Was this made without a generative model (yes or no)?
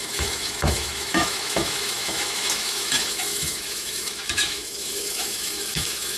no